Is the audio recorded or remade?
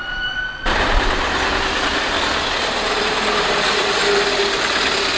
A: recorded